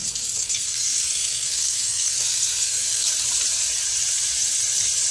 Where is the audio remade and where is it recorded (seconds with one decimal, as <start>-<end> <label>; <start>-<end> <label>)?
0.0-3.1 remade; 3.1-5.1 recorded